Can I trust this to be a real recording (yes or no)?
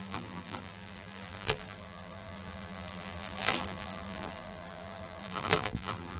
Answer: no